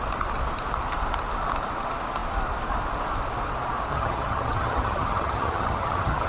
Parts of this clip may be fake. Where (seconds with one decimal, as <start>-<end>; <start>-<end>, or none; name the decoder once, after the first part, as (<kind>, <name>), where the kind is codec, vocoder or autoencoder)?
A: 3.9-6.3 (vocoder, HiFi-GAN)